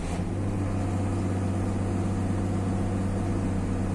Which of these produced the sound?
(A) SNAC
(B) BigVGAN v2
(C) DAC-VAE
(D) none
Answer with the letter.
D